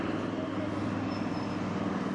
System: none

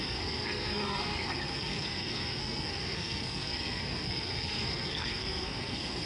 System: codec, SNAC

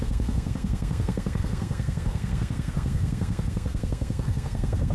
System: codec, SNAC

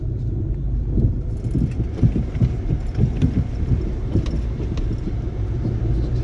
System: none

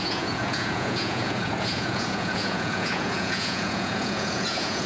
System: vocoder, Vocos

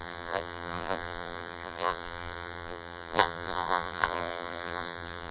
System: vocoder, BigVGAN v2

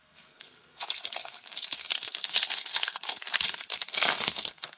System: codec, SNAC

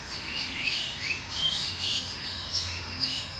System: autoencoder, DAC-VAE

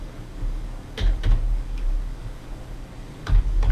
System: codec, DAC